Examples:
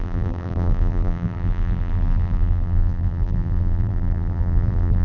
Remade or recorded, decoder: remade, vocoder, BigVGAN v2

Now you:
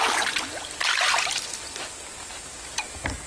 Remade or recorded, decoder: recorded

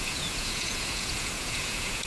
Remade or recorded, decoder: remade, vocoder, Vocos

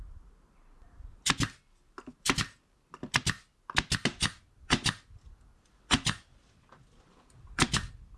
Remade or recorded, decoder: recorded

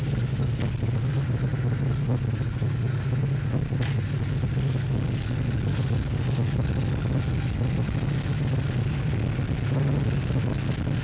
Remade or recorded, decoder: recorded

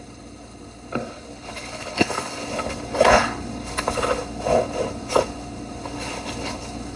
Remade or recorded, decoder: remade, codec, HILCodec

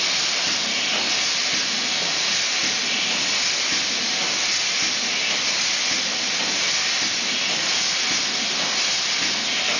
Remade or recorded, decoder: recorded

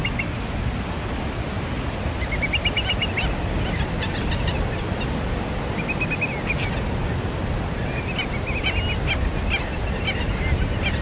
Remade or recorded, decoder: recorded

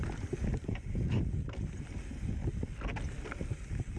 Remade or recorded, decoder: recorded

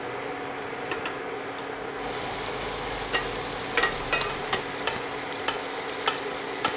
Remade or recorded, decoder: recorded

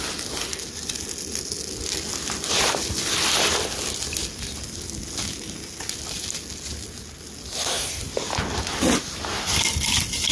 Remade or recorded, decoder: recorded